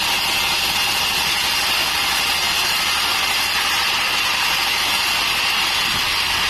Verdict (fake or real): real